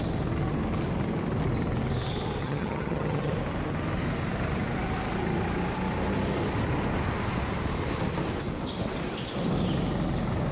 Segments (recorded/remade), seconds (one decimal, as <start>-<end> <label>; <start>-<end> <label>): 0.0-2.4 recorded; 2.4-3.3 remade; 3.3-10.5 recorded